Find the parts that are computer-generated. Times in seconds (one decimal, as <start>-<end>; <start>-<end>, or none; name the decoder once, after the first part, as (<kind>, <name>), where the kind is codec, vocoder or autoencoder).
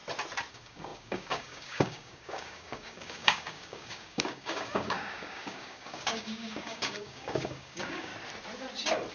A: 0.5-8.1 (codec, DAC)